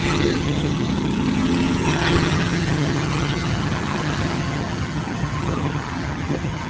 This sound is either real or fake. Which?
fake